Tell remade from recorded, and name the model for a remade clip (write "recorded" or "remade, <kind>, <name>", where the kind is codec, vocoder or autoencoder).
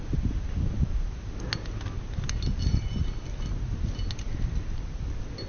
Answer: recorded